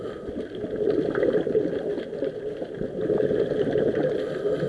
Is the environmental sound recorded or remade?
recorded